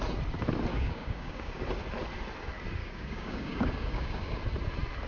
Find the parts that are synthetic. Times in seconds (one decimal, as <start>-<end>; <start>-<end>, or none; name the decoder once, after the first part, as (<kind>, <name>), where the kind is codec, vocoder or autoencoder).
0.7-1.6 (codec, DAC); 2.8-4.4